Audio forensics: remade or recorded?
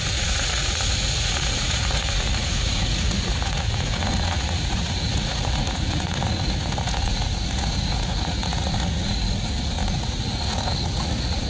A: remade